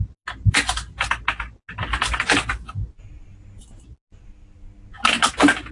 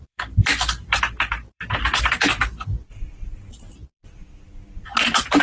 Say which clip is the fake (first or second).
second